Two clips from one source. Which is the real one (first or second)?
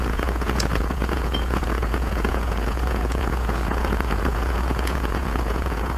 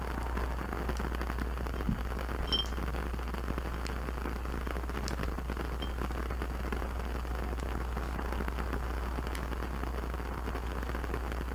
second